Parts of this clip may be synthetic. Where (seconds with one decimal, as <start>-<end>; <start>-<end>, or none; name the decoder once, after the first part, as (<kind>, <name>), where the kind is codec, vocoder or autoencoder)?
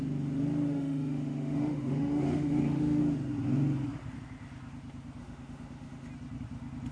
0.7-3.0 (autoencoder, DAC-VAE); 5.2-6.1